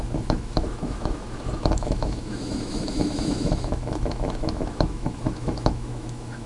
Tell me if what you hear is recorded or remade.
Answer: remade